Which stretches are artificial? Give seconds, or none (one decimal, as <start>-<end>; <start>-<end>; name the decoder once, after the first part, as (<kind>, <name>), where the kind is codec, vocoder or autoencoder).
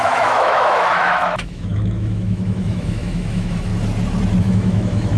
0.0-3.7 (autoencoder, DAC-VAE); 4.4-5.2